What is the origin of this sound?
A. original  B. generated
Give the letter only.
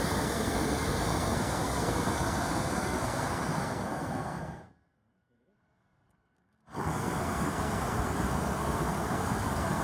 B